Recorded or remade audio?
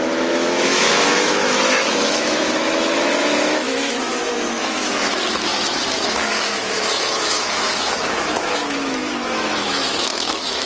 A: remade